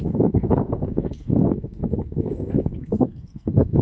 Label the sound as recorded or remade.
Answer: remade